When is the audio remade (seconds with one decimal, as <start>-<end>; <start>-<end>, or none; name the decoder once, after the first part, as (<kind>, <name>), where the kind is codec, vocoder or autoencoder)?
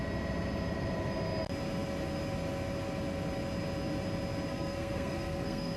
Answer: 4.5-5.8 (codec, SNAC)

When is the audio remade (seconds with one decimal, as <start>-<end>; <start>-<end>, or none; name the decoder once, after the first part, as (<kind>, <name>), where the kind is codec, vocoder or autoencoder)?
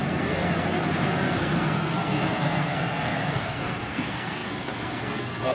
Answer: 0.0-5.5 (codec, SNAC)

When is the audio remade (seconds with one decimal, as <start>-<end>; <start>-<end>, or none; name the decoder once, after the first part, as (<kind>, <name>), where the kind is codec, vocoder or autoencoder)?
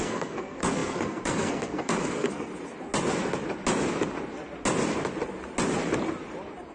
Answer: 0.0-2.5 (codec, SNAC)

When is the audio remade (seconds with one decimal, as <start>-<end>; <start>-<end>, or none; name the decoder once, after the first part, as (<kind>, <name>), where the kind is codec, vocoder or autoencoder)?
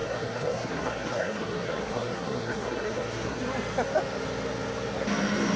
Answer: 0.0-3.4 (codec, SNAC)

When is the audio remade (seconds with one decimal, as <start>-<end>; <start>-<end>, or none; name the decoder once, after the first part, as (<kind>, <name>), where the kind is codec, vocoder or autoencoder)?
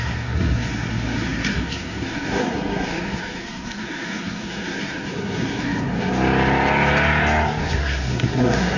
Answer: 0.0-6.1 (codec, SNAC); 7.6-8.8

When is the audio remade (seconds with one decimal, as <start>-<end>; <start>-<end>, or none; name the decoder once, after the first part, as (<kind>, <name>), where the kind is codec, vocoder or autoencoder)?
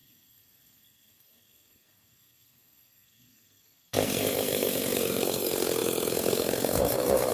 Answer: 0.0-7.3 (codec, SNAC)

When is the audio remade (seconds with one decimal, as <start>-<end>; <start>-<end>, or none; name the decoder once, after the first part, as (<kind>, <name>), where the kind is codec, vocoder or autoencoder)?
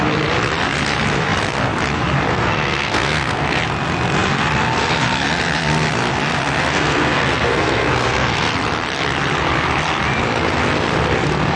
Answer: 2.3-3.6 (codec, SNAC); 6.6-8.5